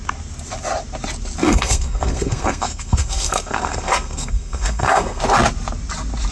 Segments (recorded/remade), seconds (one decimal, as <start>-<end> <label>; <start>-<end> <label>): 0.0-1.4 recorded; 1.4-5.2 remade; 5.2-6.3 recorded